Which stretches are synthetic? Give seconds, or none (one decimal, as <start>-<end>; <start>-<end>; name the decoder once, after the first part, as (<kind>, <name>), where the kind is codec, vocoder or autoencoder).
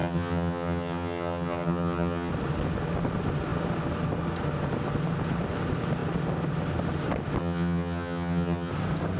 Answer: 0.0-2.3 (vocoder, HiFi-GAN); 7.4-8.7